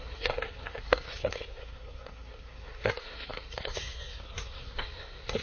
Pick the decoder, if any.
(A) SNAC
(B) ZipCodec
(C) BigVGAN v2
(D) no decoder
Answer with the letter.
A